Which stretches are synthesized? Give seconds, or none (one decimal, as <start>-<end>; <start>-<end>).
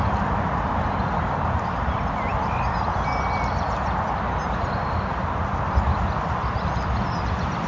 none